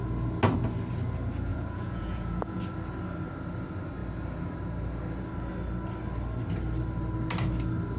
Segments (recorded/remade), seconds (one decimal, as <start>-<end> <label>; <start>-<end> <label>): 0.0-1.5 recorded; 1.5-2.6 remade; 2.6-8.0 recorded